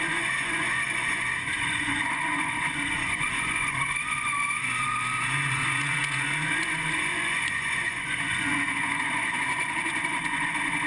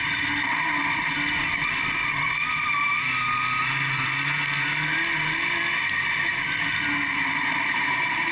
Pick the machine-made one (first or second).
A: first